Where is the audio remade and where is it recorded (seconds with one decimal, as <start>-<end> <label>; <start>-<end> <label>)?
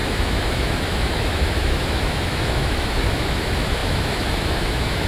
0.0-5.1 remade